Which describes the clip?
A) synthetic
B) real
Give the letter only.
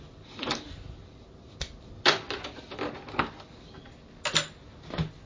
B